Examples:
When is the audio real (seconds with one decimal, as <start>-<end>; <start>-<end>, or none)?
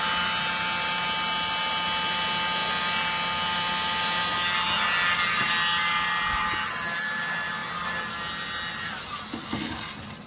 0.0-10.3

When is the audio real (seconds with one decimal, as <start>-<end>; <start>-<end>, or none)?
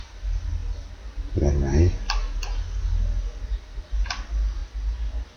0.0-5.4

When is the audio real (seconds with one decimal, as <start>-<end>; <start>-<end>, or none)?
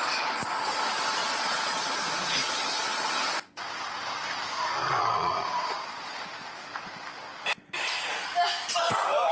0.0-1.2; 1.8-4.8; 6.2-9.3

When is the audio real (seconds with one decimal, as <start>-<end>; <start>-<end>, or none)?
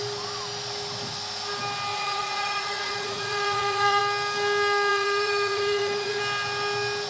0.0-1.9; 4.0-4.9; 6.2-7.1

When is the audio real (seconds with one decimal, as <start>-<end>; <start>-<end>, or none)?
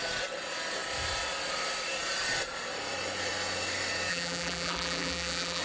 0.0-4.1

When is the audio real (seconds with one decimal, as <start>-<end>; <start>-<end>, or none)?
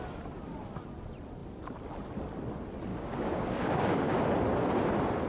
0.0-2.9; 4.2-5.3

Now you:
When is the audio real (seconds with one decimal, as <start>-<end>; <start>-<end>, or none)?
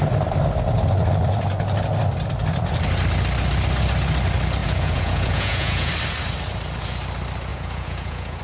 0.0-4.6; 5.9-7.5